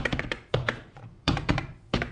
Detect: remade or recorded remade